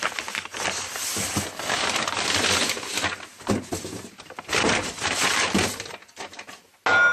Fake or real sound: real